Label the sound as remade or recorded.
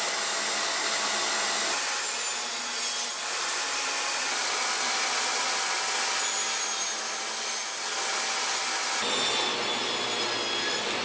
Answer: recorded